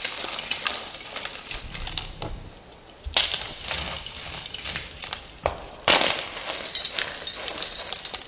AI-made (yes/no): no